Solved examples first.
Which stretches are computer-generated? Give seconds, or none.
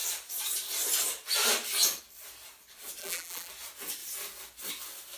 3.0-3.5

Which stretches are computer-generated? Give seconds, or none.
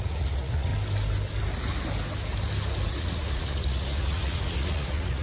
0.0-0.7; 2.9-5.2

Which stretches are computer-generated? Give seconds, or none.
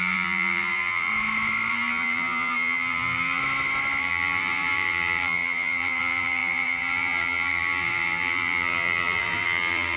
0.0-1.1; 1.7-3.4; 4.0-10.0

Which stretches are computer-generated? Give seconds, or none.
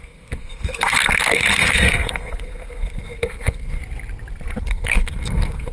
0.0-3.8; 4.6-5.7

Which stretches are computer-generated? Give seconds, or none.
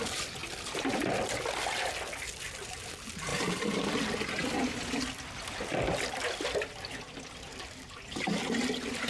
none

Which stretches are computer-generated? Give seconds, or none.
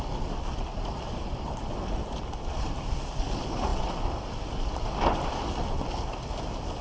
none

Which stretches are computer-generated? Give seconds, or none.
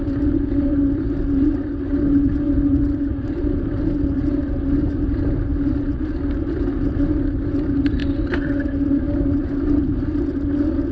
none